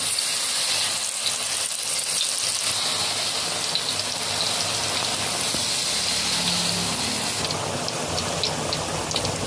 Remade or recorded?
recorded